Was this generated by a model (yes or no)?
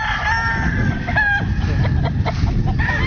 no